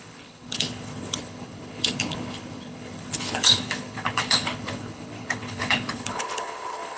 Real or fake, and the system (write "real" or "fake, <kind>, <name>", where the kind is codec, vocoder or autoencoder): fake, codec, HILCodec